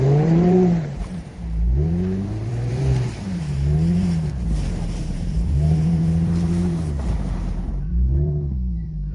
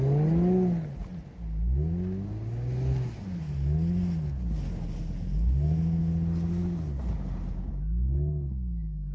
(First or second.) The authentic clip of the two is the second